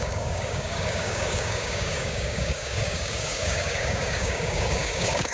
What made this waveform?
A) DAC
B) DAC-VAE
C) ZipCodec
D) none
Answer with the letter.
A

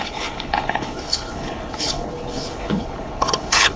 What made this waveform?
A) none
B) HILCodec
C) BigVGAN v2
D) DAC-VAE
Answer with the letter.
B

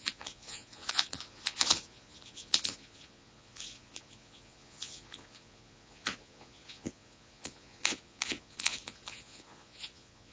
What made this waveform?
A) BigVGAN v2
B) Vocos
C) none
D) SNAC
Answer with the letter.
B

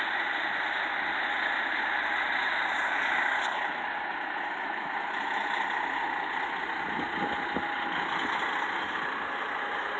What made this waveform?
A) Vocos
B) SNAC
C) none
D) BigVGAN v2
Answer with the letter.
C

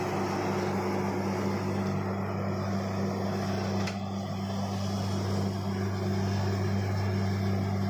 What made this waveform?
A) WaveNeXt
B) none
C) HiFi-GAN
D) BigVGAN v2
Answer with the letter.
B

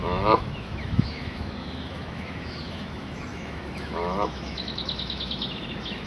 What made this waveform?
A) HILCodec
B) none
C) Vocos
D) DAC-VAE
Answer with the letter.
D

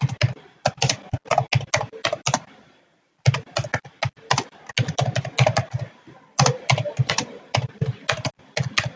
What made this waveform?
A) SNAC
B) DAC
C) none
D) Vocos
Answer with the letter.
C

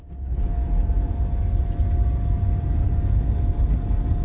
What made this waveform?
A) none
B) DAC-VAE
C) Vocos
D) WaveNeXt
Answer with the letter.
A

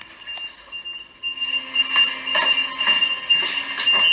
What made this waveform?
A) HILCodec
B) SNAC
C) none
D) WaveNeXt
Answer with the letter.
C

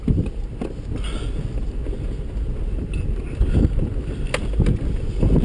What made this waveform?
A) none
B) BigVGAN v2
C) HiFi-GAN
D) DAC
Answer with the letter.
A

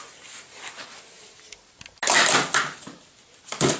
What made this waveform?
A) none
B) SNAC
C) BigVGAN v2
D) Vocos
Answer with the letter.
A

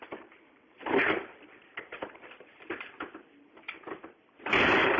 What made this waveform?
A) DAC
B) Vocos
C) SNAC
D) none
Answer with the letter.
D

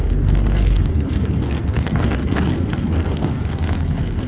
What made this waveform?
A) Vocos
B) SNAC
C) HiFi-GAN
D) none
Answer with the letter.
B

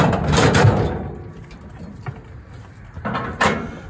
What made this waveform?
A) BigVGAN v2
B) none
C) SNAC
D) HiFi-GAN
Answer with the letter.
B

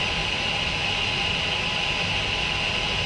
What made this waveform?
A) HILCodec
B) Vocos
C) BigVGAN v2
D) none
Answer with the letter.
D